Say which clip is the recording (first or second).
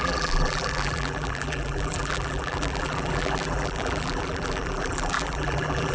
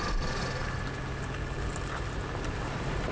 second